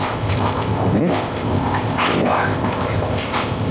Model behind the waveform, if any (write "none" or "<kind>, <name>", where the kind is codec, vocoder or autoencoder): codec, ZipCodec